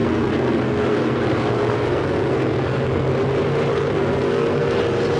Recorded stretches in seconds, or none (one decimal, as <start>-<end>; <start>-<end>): 3.1-3.7; 4.8-5.2